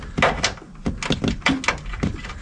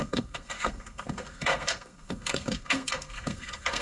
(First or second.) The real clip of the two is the first